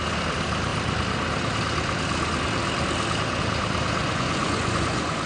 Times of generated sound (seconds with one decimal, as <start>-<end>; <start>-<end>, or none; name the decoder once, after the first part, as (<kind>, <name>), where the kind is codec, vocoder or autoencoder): 4.0-5.3 (vocoder, Vocos)